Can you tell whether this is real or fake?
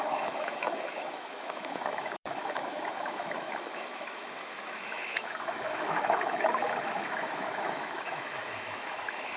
fake